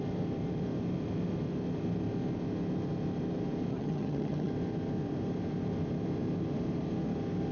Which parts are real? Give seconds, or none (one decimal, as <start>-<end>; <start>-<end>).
0.0-3.7; 4.5-7.5